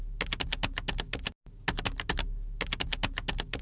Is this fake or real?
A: real